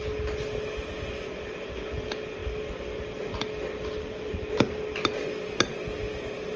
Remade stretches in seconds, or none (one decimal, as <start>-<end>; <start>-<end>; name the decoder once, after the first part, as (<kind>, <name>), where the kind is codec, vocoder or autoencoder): none